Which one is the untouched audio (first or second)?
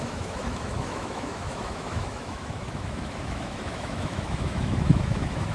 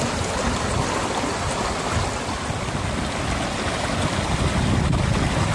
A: second